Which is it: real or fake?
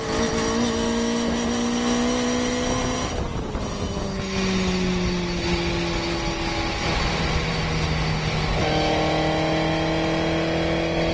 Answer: real